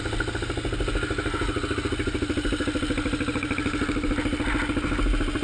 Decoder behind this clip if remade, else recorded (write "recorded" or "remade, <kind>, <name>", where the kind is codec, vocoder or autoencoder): recorded